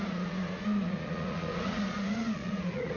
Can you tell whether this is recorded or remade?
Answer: remade